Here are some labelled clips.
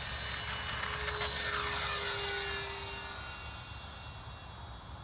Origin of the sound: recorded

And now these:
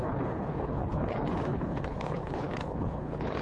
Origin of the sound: remade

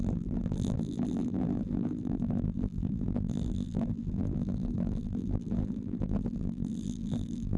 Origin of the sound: remade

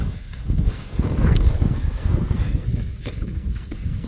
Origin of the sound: remade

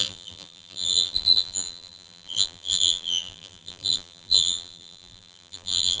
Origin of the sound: remade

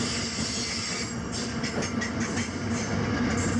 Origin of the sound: recorded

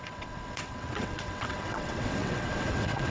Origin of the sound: remade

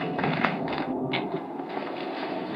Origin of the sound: remade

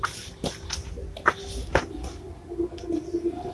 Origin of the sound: recorded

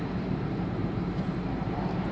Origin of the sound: remade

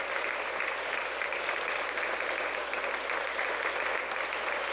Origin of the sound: recorded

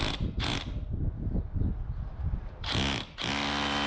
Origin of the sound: recorded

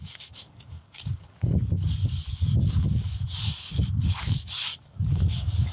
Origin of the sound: remade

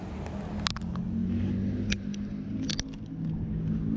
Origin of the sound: recorded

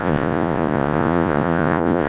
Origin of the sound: remade